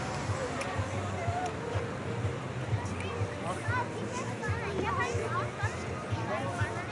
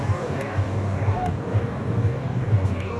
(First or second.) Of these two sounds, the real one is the first